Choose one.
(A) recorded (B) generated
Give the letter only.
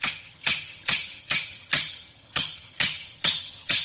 B